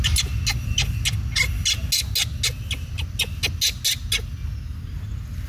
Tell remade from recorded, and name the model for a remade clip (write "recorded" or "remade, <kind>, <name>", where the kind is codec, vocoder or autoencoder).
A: recorded